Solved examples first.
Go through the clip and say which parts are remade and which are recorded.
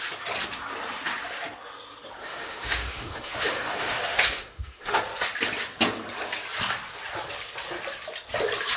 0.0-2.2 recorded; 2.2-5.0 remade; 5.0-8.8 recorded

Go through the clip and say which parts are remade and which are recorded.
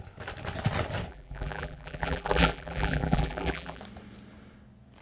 0.0-1.1 recorded; 1.1-3.8 remade; 3.8-5.0 recorded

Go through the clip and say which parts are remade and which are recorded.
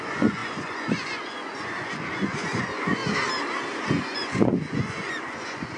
0.0-3.0 remade; 3.0-3.9 recorded; 3.9-5.8 remade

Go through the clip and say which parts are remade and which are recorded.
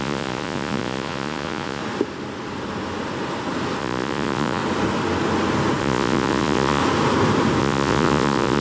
0.0-1.8 remade; 1.8-3.8 recorded; 3.8-4.6 remade; 4.6-5.8 recorded; 5.8-6.8 remade; 6.8-7.6 recorded; 7.6-8.6 remade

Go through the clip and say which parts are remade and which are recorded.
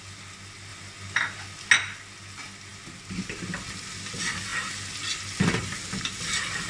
0.0-6.7 recorded